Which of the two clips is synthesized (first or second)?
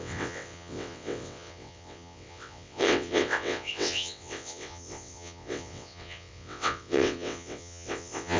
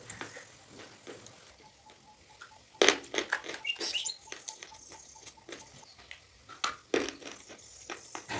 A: first